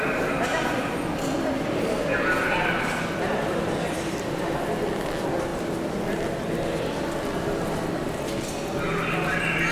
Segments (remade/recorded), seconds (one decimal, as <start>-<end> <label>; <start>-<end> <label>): 0.0-9.7 recorded